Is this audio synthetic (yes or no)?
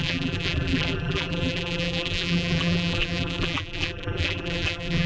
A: yes